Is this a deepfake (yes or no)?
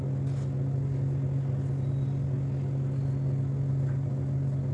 no